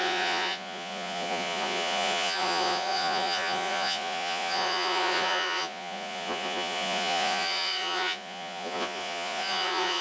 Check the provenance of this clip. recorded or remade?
remade